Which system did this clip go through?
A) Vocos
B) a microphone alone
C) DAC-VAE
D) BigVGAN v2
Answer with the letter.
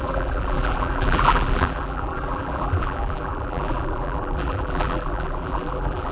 D